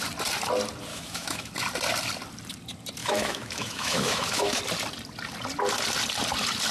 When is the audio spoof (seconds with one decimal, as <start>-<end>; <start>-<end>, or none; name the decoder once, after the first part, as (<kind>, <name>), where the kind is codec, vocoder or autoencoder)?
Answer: 0.9-1.5 (autoencoder, DAC-VAE); 3.0-4.6